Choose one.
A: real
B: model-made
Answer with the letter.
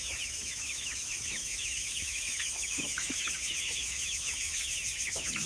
B